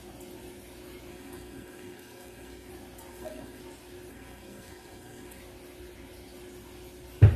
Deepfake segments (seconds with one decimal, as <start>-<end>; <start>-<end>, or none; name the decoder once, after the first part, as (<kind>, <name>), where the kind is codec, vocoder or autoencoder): 1.1-2.7 (codec, SNAC); 3.1-3.6; 4.1-5.4